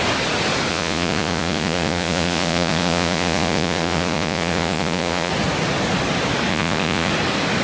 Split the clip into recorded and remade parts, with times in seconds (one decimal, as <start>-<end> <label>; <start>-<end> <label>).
0.0-0.7 recorded; 0.7-5.3 remade; 5.3-6.5 recorded; 6.5-7.1 remade; 7.1-7.6 recorded